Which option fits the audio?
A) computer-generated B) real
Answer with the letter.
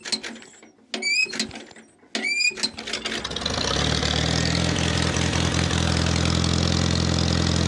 B